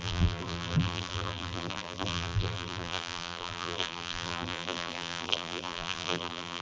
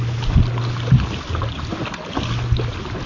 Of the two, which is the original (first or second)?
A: second